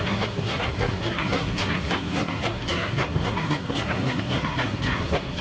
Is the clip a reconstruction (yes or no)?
yes